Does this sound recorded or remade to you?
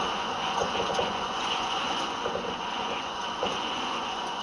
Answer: remade